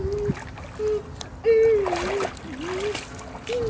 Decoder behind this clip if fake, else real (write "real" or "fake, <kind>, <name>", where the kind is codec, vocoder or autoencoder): real